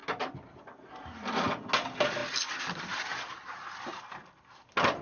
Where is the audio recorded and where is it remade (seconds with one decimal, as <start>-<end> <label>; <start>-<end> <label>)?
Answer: 0.0-5.0 recorded